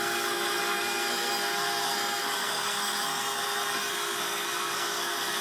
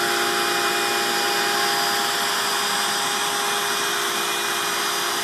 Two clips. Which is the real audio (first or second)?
second